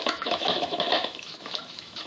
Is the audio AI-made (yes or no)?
yes